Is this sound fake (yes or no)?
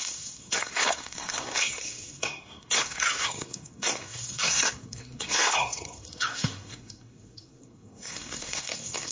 yes